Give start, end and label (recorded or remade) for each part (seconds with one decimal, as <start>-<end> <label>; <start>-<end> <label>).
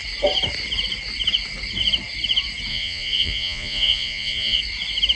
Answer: 0.0-2.7 recorded; 2.7-4.6 remade; 4.6-5.1 recorded